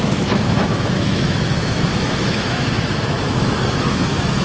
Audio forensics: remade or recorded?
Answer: remade